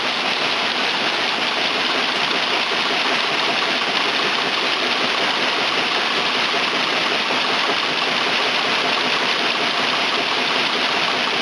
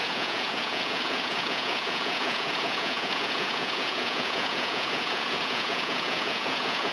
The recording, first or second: first